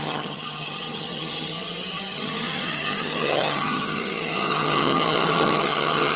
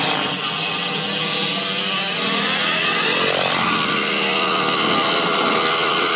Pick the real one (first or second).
second